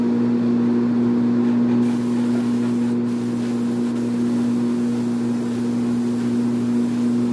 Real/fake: real